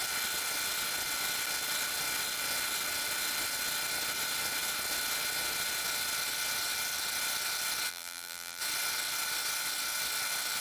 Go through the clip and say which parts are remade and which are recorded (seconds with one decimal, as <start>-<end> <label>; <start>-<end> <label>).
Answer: 0.0-7.9 recorded; 7.9-8.6 remade; 8.6-10.6 recorded